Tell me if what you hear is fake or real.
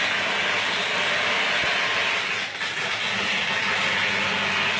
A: real